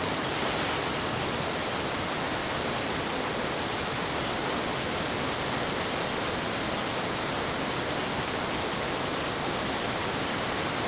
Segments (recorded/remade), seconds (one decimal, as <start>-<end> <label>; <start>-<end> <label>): 0.0-10.9 remade